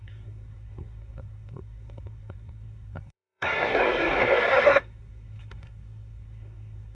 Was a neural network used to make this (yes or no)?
yes